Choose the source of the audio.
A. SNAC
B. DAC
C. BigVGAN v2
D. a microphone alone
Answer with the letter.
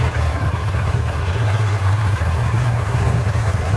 A